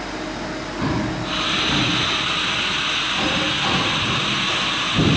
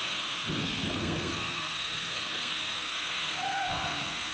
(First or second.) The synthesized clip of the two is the second